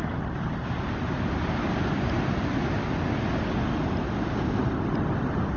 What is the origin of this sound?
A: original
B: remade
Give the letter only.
A